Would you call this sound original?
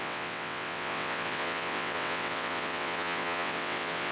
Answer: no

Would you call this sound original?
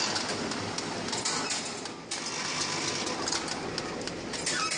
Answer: yes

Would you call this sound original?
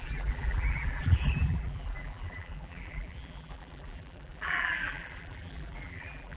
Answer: no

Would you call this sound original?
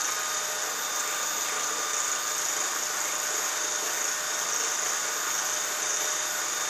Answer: yes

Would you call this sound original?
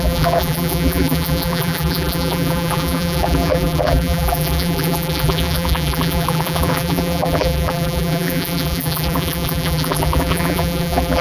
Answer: no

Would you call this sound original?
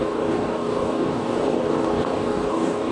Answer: no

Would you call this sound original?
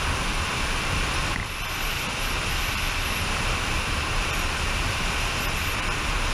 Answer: no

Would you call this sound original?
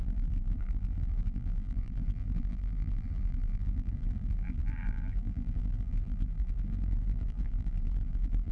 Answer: no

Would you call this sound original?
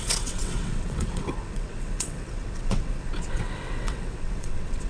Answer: no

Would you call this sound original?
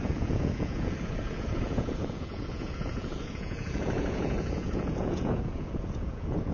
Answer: no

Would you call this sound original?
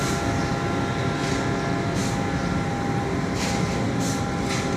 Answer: yes